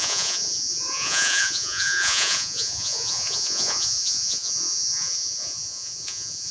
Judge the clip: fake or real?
fake